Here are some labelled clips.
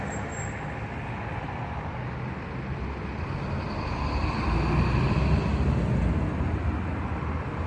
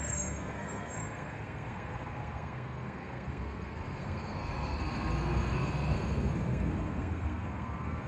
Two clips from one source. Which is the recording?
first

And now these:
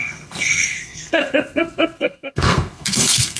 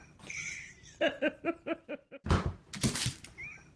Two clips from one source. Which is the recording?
second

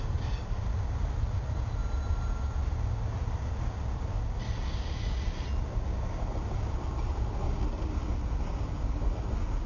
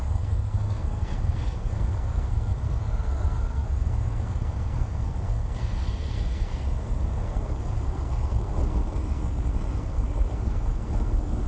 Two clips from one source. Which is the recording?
first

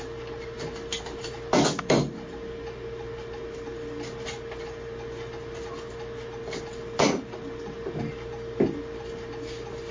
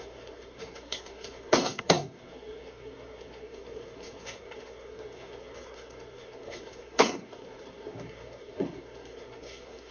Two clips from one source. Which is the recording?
first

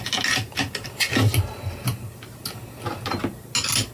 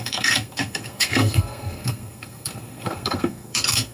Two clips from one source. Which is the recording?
first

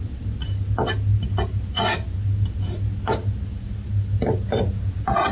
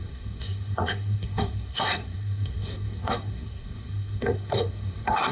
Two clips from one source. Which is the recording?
first